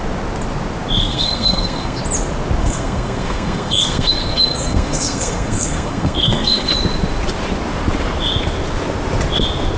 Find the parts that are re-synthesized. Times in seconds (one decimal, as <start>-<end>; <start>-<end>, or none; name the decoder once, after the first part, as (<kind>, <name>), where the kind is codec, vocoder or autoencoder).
1.0-2.0 (codec, SNAC); 2.6-6.7

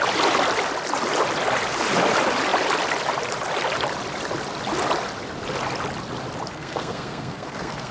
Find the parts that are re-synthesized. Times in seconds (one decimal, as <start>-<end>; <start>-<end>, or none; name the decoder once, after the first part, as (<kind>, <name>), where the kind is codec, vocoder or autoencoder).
6.5-7.9 (codec, SNAC)

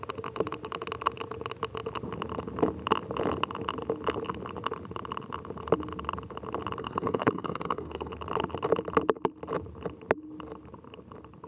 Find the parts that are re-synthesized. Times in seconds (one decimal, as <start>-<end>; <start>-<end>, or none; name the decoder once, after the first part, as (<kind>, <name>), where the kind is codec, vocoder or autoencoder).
6.8-8.1 (codec, SNAC)

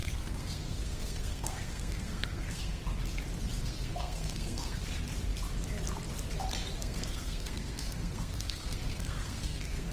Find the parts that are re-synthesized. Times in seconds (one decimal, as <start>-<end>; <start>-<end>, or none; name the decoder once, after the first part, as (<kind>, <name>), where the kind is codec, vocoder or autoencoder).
0.0-2.8 (codec, SNAC); 3.6-4.8; 6.8-9.9